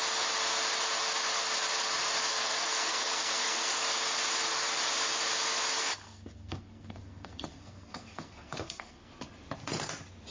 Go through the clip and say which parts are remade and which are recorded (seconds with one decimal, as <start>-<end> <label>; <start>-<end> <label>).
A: 0.0-2.3 recorded; 2.3-3.7 remade; 3.7-5.8 recorded; 5.8-9.1 remade; 9.1-10.3 recorded